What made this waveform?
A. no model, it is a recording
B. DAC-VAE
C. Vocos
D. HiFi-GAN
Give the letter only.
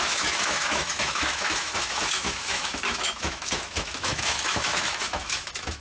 B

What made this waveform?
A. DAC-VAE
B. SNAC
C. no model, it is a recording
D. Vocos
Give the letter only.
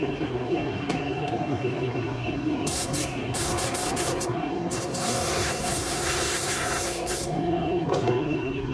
B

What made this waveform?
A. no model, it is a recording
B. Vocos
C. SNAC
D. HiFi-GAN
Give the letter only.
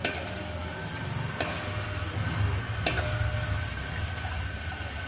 A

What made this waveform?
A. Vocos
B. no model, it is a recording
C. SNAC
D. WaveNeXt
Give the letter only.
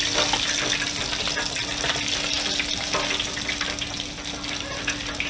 B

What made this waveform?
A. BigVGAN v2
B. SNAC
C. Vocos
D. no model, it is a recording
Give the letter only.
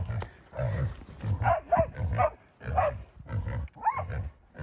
D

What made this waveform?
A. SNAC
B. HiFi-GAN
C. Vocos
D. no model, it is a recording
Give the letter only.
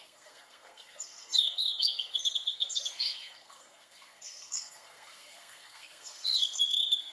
A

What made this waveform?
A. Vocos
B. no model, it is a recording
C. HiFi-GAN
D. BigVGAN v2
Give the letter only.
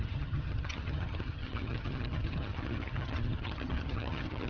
C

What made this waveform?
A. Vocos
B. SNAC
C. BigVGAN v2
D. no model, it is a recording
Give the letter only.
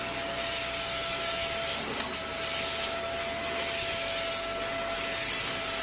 D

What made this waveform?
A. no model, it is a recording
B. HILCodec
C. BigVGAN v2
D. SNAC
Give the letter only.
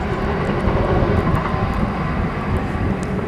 A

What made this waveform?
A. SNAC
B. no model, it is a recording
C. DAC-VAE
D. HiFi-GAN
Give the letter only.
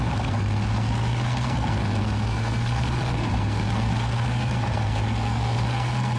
A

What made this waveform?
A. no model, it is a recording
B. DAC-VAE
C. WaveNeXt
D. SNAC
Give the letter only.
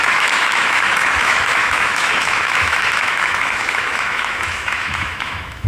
B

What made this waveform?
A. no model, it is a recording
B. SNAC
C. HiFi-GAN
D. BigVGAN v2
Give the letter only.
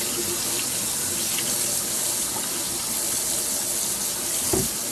A